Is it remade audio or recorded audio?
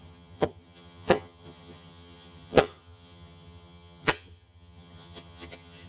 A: remade